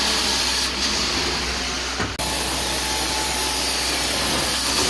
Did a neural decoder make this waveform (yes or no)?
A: no